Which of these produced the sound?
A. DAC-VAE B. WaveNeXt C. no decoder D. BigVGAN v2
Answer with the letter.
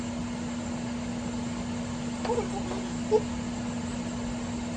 C